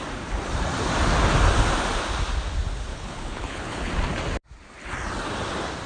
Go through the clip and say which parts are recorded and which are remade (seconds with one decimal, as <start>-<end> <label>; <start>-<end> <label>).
0.0-2.9 recorded; 2.9-3.9 remade; 3.9-5.9 recorded